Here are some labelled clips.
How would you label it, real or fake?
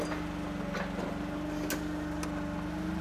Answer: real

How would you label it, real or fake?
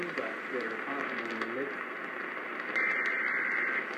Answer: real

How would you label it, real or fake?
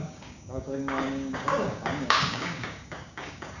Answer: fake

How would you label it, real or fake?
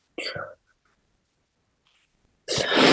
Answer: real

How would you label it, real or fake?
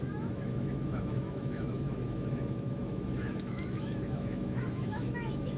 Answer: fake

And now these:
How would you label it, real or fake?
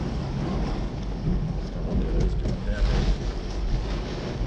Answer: fake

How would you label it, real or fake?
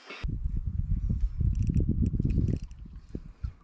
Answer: real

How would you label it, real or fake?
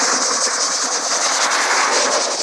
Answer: real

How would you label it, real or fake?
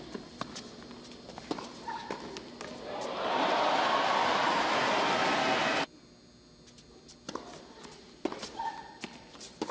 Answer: fake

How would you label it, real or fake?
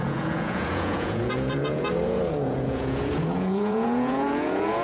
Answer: fake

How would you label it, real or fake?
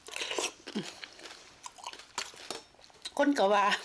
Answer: real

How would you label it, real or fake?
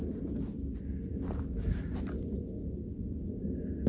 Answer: real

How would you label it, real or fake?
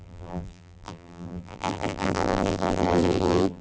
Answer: fake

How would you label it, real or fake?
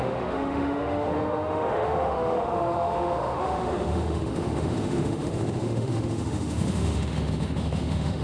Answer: fake